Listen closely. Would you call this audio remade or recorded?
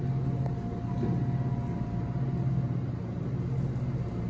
recorded